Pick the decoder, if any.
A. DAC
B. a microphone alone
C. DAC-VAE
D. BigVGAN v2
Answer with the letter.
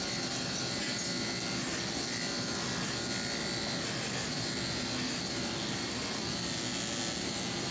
B